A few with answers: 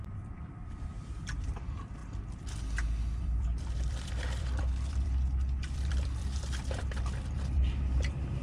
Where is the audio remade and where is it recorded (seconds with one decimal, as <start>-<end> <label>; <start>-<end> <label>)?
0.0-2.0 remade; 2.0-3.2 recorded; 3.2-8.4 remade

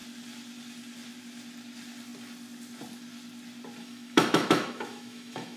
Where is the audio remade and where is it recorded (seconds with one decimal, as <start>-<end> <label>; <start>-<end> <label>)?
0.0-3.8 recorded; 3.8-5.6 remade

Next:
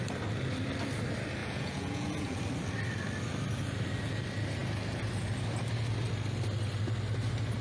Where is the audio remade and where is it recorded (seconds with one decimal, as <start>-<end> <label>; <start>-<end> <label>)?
0.0-1.4 recorded; 1.4-2.4 remade; 2.4-7.6 recorded

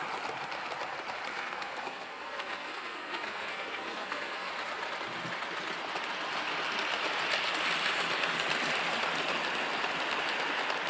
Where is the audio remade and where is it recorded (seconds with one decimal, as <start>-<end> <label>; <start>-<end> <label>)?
0.0-1.3 recorded; 1.3-4.5 remade; 4.5-10.9 recorded